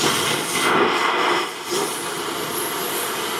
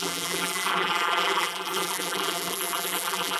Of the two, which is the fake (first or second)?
second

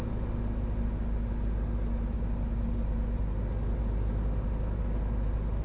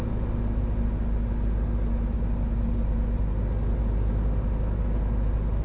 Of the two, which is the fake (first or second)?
first